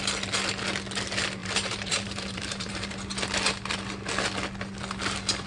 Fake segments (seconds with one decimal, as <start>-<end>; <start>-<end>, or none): 1.4-2.9